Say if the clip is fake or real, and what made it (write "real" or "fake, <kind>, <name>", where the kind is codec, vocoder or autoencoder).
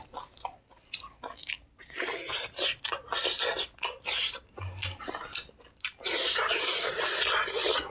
real